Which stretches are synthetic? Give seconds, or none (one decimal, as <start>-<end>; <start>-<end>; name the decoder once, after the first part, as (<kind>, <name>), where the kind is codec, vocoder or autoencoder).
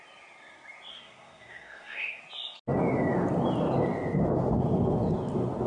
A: 0.9-2.2 (codec, SNAC)